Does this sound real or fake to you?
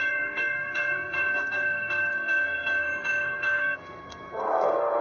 fake